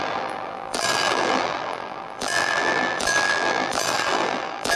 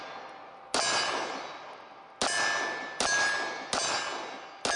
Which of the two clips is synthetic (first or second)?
first